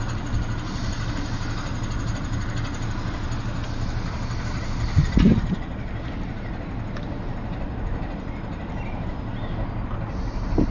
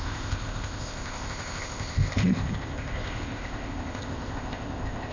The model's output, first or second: second